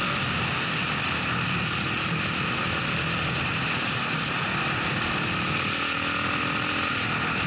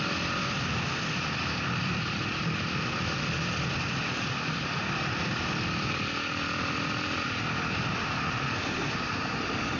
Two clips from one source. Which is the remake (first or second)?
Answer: second